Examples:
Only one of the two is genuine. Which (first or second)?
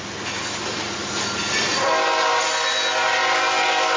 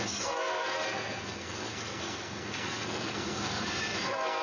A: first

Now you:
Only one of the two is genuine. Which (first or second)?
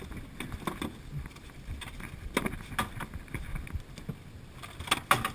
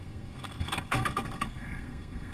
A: first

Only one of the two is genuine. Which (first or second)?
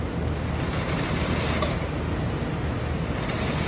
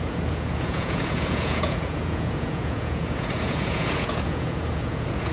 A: first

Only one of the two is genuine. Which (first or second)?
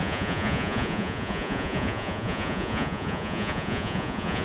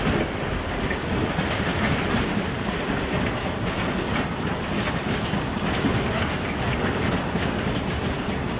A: second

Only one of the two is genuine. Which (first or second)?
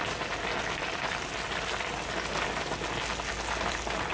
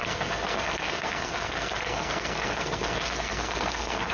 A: first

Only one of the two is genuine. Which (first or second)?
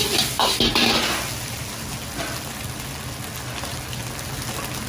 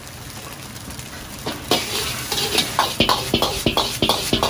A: first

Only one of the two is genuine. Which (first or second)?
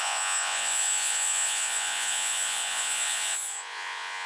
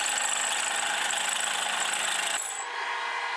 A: second